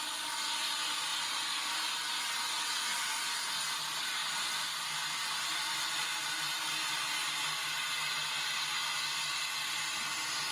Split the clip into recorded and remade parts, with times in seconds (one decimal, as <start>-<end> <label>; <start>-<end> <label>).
0.0-10.5 recorded